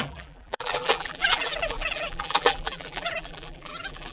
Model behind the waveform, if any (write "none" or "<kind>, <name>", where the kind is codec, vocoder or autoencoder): vocoder, BigVGAN v2